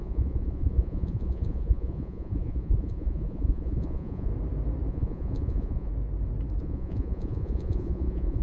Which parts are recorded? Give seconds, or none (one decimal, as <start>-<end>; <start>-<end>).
4.3-4.9; 5.9-6.6